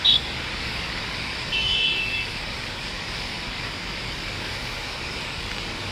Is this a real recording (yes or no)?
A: no